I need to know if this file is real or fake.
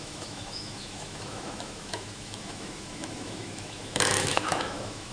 fake